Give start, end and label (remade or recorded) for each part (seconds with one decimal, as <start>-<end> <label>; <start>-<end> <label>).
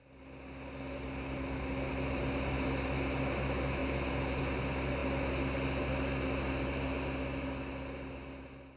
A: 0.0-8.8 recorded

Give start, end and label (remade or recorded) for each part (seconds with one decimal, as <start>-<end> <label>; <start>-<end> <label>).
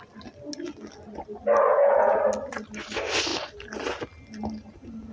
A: 0.0-1.7 recorded; 1.7-2.2 remade; 2.2-5.1 recorded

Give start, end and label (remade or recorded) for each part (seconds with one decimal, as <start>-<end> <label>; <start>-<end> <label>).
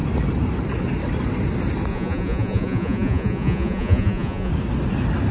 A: 0.0-1.9 recorded; 1.9-4.5 remade; 4.5-5.3 recorded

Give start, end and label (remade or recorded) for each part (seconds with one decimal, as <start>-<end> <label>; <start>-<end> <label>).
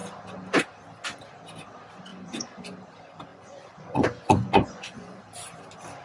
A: 0.0-2.1 recorded; 2.1-2.6 remade; 2.6-3.3 recorded; 3.3-5.2 remade; 5.2-6.0 recorded